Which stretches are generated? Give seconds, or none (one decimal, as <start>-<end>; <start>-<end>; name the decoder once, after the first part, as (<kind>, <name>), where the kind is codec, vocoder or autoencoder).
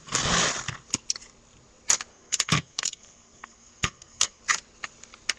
2.1-4.4 (codec, SNAC)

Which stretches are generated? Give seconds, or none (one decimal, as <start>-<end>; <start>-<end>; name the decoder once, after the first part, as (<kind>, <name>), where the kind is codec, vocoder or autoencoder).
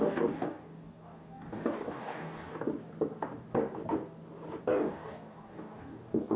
0.0-2.5 (codec, DAC); 4.6-6.4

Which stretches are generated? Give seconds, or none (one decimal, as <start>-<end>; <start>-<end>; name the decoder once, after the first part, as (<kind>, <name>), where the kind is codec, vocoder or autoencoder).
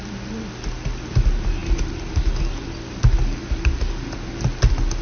none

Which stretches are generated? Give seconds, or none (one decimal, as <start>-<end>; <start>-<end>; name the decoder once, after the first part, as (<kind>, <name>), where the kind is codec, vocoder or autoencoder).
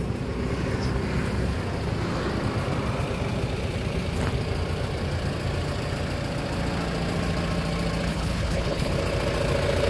8.1-8.9 (codec, HILCodec)